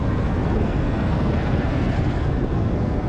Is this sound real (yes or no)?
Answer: no